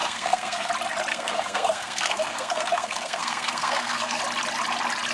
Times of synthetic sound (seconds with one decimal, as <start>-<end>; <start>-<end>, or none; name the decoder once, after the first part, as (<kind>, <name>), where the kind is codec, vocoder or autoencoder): 0.0-0.7 (codec, SNAC); 1.1-4.2